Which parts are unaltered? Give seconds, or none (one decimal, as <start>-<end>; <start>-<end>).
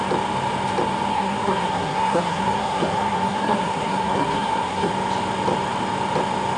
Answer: 0.0-1.1; 4.9-6.6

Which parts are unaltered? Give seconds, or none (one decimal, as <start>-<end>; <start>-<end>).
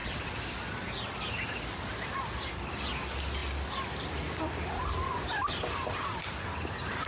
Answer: 0.0-7.1